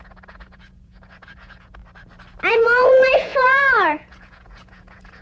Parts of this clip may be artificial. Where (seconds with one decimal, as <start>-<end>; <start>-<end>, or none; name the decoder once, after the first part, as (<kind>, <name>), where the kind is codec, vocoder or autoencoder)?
0.0-1.8 (vocoder, Vocos); 2.5-5.2